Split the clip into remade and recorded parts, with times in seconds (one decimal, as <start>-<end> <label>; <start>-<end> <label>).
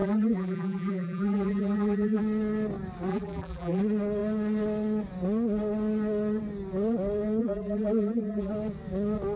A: 0.0-2.2 remade; 2.2-3.1 recorded; 3.1-3.8 remade; 3.8-7.4 recorded; 7.4-8.5 remade; 8.5-9.4 recorded